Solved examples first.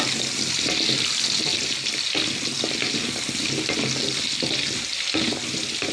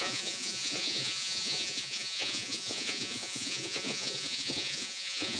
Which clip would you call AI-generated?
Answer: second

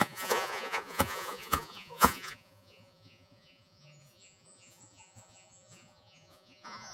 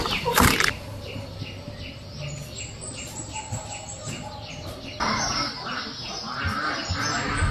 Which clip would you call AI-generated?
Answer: first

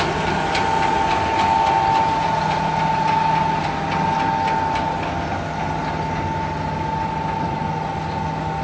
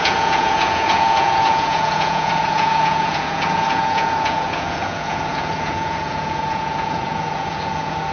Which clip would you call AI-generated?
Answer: second